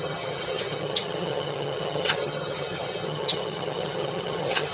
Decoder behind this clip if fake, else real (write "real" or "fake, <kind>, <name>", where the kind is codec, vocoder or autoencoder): fake, vocoder, HiFi-GAN